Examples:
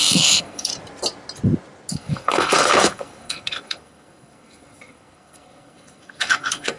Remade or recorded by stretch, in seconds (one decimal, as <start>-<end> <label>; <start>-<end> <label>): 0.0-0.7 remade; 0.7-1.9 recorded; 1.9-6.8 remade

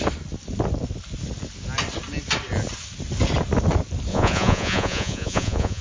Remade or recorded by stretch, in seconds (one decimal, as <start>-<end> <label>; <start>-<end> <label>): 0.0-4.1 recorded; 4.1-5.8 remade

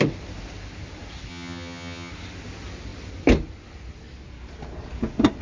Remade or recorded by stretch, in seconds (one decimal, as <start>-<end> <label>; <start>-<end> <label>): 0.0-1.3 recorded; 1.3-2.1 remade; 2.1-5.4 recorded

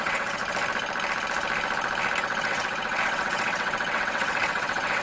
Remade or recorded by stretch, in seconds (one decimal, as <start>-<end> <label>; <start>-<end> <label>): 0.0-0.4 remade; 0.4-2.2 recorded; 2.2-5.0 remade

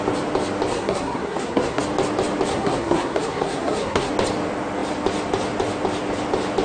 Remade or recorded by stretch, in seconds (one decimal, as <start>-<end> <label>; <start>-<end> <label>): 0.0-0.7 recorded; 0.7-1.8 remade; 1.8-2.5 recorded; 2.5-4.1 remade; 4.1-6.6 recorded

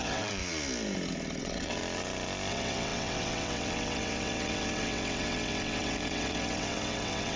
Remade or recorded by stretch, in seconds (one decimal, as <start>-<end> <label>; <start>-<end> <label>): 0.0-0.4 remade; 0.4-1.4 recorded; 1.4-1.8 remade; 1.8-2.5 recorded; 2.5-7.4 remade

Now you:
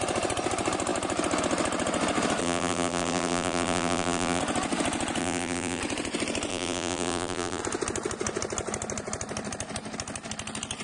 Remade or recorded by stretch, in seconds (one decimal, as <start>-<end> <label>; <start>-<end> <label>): 0.0-2.4 recorded; 2.4-4.4 remade; 4.4-5.2 recorded; 5.2-5.8 remade; 5.8-6.5 recorded; 6.5-7.6 remade; 7.6-10.8 recorded

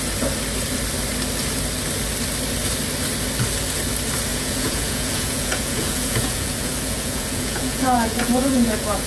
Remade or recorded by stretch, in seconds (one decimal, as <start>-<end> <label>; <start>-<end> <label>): 0.0-4.3 recorded; 4.3-9.1 remade